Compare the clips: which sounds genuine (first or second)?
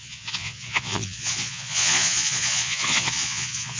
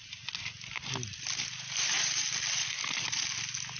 second